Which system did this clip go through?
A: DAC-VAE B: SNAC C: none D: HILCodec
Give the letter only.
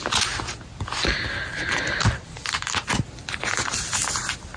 C